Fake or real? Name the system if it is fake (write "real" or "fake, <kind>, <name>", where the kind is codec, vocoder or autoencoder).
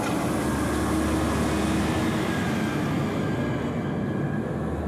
real